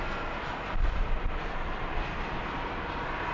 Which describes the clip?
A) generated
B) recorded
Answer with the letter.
B